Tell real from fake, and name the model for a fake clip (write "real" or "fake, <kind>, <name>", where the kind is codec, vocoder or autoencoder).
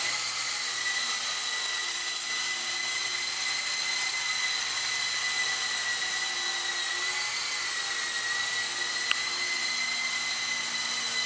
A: real